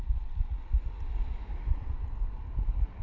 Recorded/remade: recorded